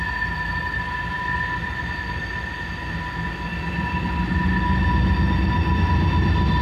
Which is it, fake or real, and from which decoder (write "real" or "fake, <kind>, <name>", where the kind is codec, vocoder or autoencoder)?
real